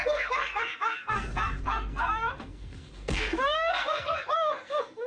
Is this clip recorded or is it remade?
remade